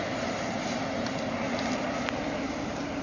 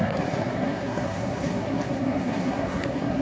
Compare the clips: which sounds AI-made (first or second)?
second